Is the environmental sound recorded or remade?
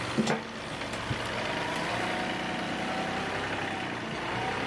recorded